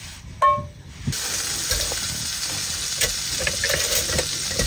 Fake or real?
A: real